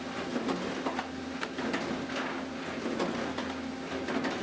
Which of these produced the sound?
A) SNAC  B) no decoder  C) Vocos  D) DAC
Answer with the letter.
B